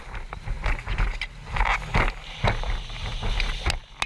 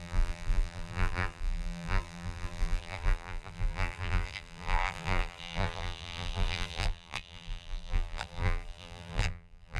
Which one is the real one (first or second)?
first